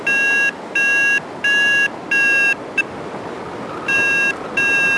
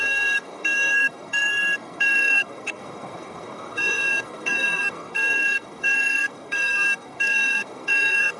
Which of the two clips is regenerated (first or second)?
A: second